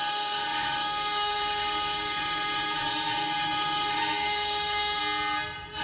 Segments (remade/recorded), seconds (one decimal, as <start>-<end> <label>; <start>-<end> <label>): 0.0-5.0 remade; 5.0-5.8 recorded